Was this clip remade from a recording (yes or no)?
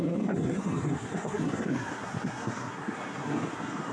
yes